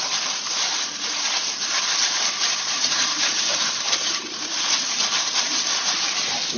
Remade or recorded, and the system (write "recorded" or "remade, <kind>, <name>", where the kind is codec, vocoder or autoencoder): remade, vocoder, BigVGAN v2